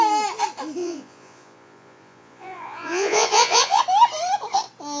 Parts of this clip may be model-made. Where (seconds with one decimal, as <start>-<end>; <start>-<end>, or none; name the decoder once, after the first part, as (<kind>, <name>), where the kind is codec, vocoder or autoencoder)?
0.8-3.8 (vocoder, Vocos)